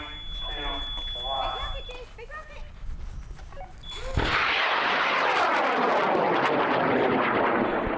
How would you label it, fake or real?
real